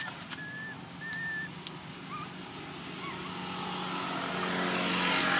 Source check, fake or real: real